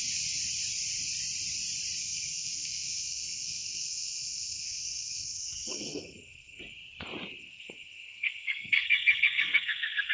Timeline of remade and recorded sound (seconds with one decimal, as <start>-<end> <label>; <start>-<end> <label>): 0.0-2.0 recorded; 2.0-6.6 remade; 6.6-7.4 recorded; 7.4-10.1 remade